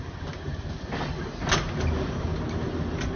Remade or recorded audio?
recorded